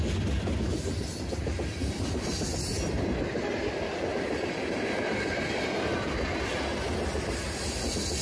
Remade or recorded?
recorded